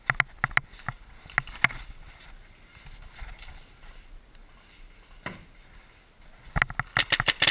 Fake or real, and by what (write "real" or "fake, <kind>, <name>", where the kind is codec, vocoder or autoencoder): real